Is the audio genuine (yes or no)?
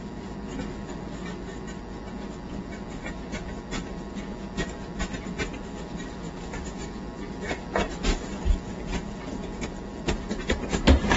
yes